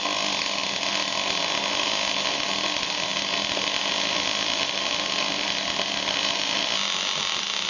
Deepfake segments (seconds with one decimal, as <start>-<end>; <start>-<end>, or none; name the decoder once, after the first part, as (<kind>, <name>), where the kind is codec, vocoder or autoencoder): none